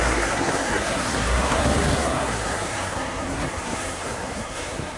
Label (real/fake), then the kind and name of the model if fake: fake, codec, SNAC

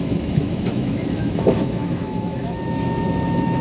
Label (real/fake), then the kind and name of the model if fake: fake, autoencoder, DAC-VAE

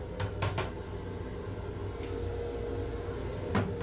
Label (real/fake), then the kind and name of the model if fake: real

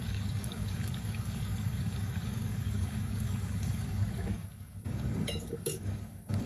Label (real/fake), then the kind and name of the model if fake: fake, codec, DAC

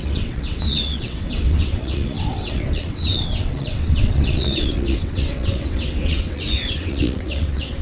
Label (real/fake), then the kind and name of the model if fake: fake, vocoder, WaveNeXt